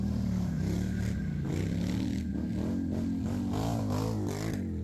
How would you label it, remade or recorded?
recorded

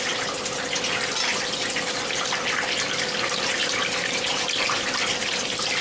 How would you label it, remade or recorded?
recorded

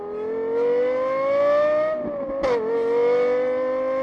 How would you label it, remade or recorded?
recorded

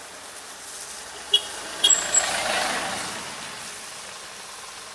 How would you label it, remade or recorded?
recorded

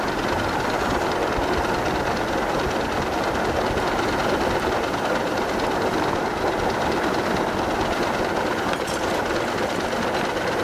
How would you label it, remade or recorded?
recorded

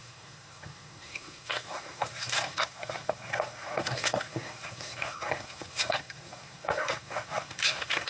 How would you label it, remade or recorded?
remade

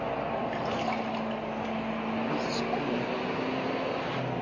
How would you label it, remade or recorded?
recorded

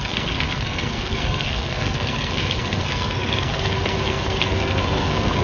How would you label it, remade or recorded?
remade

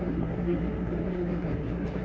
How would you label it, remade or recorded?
remade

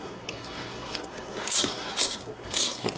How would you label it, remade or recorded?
remade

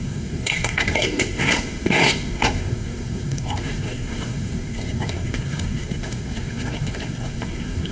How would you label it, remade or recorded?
remade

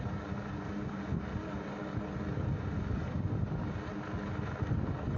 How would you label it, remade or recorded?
recorded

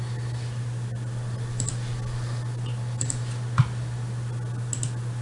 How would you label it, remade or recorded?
recorded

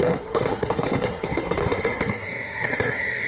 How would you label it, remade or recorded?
remade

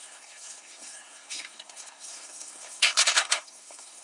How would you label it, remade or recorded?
remade